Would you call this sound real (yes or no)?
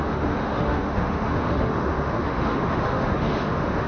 no